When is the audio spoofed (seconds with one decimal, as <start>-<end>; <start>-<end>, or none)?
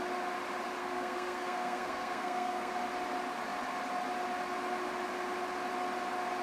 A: 0.8-2.7